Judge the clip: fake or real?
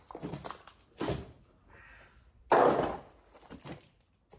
real